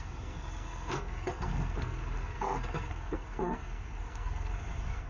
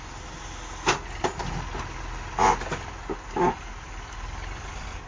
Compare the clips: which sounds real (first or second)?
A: second